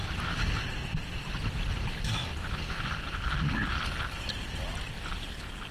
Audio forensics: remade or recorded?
recorded